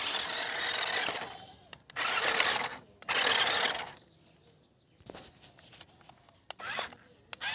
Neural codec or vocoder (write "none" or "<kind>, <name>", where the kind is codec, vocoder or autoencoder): none